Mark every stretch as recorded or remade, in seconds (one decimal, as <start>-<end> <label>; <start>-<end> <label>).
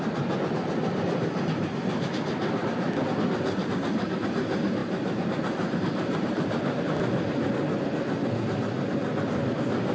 0.0-4.8 recorded; 4.8-6.8 remade; 6.8-9.9 recorded